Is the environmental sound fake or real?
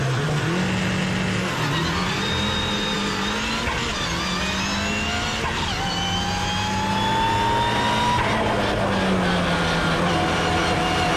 real